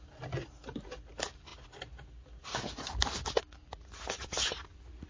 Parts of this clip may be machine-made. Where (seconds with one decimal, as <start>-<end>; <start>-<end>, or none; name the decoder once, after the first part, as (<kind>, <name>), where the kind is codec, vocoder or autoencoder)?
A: none